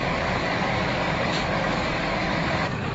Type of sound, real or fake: fake